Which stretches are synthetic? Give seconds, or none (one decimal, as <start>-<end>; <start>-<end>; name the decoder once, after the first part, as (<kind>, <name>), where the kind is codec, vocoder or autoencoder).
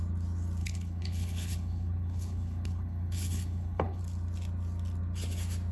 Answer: 0.6-4.0 (codec, HILCodec)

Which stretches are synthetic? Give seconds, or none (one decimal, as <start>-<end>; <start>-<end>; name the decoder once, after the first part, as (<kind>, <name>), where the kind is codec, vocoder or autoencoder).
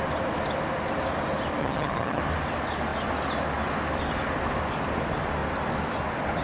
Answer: 1.6-2.2 (vocoder, HiFi-GAN)